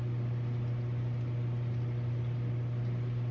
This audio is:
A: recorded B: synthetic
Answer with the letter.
A